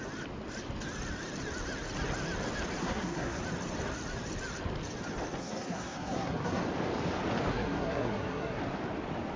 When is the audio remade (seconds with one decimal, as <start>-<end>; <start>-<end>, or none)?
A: 2.8-3.4; 5.4-6.6; 7.5-8.6